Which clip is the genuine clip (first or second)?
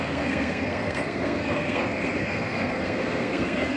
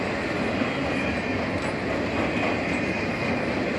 second